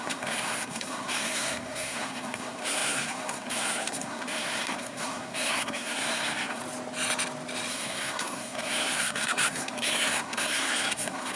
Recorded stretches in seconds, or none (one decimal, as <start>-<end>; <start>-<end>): 6.6-7.7